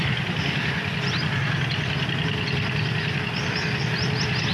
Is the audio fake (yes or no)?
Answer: no